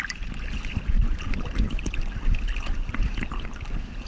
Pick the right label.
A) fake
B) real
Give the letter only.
B